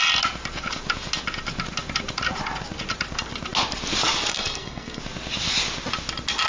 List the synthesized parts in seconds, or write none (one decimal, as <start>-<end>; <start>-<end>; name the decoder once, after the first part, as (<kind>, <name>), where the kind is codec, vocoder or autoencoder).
4.3-5.0 (codec, SNAC)

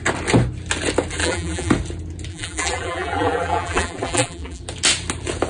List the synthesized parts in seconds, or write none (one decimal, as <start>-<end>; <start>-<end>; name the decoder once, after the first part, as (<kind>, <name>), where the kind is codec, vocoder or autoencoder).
1.2-1.7 (vocoder, BigVGAN v2); 2.3-4.6

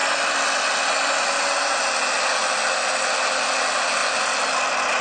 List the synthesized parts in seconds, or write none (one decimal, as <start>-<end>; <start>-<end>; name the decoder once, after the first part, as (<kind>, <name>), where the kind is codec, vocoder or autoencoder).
none

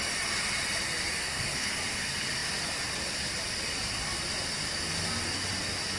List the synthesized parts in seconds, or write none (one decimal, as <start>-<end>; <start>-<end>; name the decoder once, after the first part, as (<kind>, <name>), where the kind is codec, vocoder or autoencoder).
1.2-1.7 (codec, SNAC)

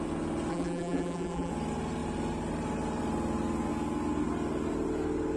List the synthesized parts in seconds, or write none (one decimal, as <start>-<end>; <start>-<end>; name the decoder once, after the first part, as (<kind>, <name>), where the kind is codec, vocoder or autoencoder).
0.5-1.5 (vocoder, BigVGAN v2)

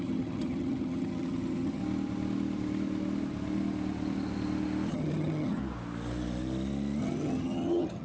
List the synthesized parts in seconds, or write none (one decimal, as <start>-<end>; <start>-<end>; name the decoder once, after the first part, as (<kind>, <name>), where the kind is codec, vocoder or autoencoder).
0.0-1.8 (vocoder, HiFi-GAN); 4.9-5.6; 7.0-8.0

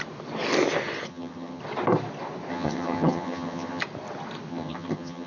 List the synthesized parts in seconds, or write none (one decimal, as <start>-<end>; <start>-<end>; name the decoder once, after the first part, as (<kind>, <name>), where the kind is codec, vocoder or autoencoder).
1.1-1.6 (vocoder, HiFi-GAN); 2.5-3.8; 4.5-5.3

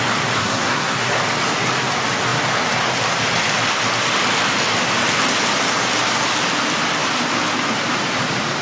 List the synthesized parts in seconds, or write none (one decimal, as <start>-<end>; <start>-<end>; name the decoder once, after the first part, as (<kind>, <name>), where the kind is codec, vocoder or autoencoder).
0.4-1.2 (codec, SNAC)